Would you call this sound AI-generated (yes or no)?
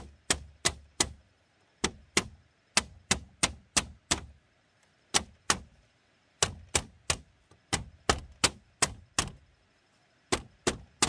no